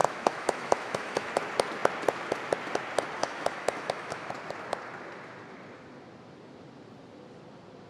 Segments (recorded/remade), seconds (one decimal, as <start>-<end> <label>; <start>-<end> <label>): 0.0-1.3 remade; 1.3-3.2 recorded; 3.2-4.3 remade; 4.3-7.9 recorded